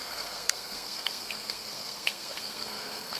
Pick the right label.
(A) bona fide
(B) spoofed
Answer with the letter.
B